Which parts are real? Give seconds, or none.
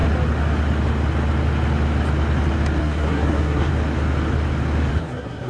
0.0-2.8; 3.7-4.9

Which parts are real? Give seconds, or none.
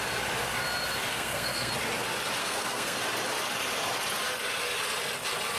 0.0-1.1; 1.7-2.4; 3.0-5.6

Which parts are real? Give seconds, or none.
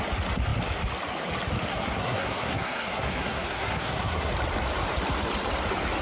0.0-1.7; 4.3-6.0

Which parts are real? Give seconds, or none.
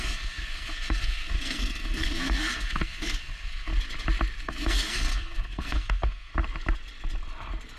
3.7-4.4; 6.3-7.8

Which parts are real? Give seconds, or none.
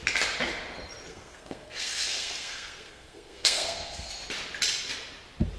0.0-1.1; 4.1-5.6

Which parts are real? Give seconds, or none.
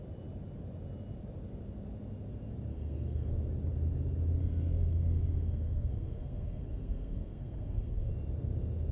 0.0-2.7; 3.3-4.4; 8.1-8.9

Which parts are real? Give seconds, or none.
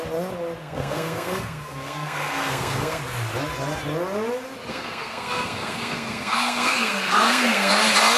0.0-0.6; 3.0-4.7; 7.7-8.2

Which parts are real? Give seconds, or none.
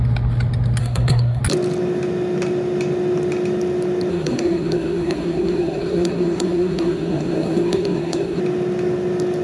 0.0-0.8; 1.4-4.1; 8.4-9.4